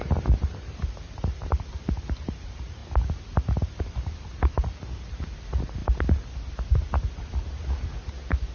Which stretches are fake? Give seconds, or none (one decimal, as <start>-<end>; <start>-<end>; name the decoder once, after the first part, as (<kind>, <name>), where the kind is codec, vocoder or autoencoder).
0.0-2.8 (vocoder, BigVGAN v2); 3.6-5.8; 6.6-8.5